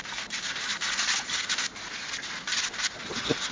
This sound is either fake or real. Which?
real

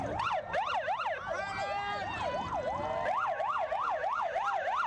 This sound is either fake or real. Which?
real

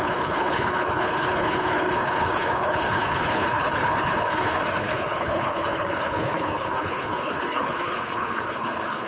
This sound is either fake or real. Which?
fake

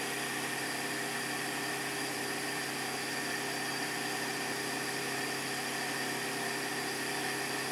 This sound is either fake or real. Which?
real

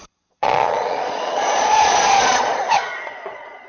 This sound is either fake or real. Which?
fake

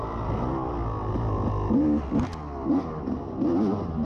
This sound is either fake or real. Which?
real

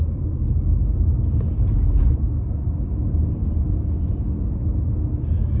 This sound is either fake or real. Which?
real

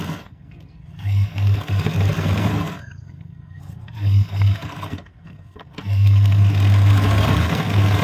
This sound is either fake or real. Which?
fake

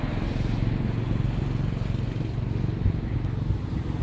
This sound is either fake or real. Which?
real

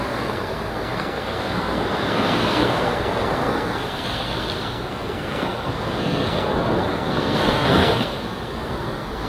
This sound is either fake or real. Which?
fake